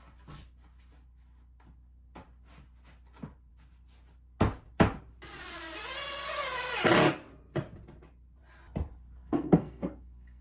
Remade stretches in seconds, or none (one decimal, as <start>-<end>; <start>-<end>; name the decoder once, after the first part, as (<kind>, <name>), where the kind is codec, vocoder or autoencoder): 9.2-10.4 (codec, SNAC)